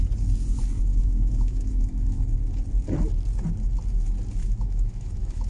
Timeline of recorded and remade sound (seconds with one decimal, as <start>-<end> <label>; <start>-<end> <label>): 0.0-0.9 recorded; 0.9-2.2 remade; 2.2-4.4 recorded; 4.4-5.5 remade